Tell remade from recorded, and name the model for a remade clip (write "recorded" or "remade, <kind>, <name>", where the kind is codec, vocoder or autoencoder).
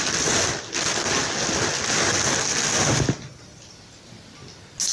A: recorded